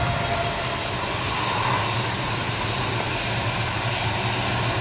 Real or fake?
real